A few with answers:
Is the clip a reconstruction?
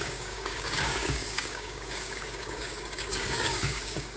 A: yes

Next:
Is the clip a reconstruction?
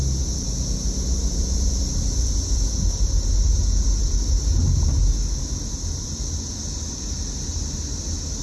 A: no